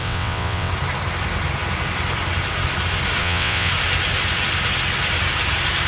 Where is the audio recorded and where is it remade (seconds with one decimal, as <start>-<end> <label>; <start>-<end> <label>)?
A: 0.0-0.7 remade; 0.7-3.2 recorded; 3.2-3.7 remade; 3.7-5.9 recorded